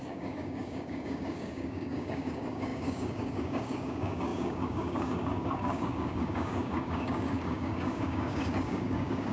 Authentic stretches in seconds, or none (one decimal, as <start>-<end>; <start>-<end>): none